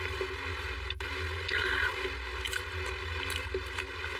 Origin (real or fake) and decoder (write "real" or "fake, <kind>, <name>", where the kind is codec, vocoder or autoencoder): real